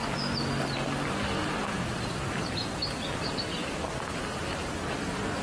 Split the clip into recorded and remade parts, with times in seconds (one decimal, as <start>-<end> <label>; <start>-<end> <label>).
0.0-1.5 recorded; 1.5-2.6 remade; 2.6-3.8 recorded; 3.8-5.4 remade